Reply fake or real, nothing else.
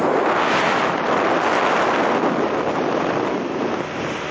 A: real